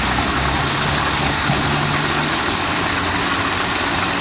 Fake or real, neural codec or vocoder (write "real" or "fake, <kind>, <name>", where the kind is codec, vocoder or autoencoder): real